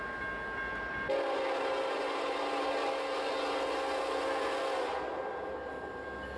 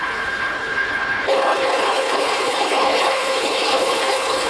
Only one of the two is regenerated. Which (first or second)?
second